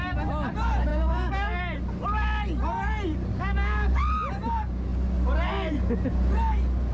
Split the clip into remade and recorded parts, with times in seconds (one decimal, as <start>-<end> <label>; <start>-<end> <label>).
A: 0.0-0.9 recorded; 0.9-1.6 remade; 1.6-3.3 recorded; 3.3-4.0 remade; 4.0-6.9 recorded